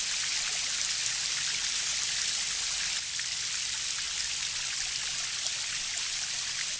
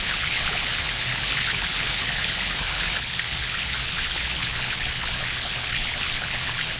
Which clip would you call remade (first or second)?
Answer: second